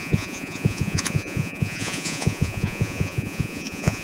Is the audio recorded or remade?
remade